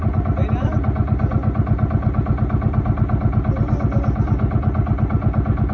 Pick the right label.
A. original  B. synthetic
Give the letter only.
A